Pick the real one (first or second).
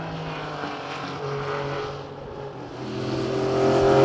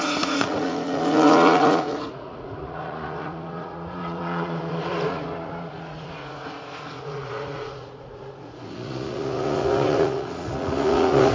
first